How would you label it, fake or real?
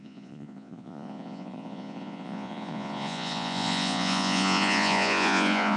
fake